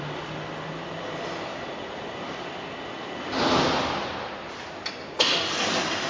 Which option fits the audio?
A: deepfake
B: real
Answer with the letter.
B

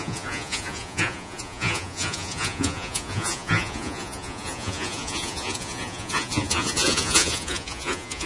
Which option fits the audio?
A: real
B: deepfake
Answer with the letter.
B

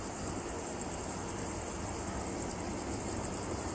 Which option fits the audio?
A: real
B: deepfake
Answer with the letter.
A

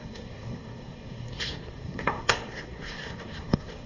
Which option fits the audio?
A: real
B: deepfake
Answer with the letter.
B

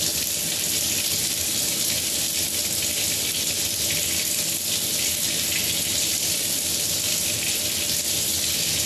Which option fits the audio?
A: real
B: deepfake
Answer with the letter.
A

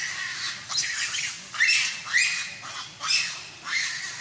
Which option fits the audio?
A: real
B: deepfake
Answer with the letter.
A